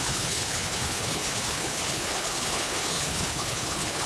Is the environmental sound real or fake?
fake